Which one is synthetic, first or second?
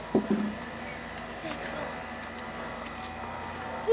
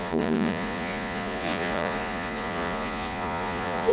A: second